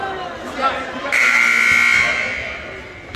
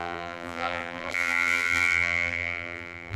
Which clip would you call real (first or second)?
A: first